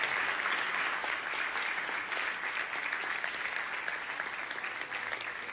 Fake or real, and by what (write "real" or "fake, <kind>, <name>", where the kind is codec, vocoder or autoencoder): real